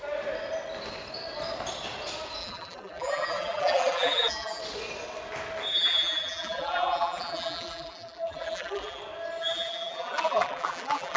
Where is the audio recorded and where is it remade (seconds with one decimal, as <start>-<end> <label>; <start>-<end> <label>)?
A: 0.0-2.4 recorded; 2.4-4.6 remade; 4.6-5.7 recorded; 5.7-9.0 remade; 9.0-9.4 recorded; 9.4-11.2 remade